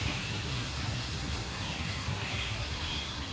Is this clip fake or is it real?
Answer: fake